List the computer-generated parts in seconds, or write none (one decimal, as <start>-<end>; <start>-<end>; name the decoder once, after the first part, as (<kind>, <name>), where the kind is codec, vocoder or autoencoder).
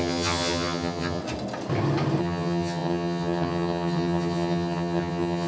0.0-1.2 (vocoder, HiFi-GAN); 2.2-5.5